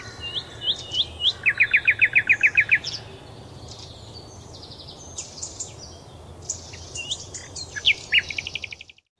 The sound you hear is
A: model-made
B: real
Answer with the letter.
B